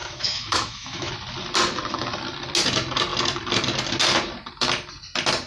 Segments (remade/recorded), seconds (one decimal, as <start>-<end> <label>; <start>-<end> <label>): 0.0-1.1 remade; 1.1-5.5 recorded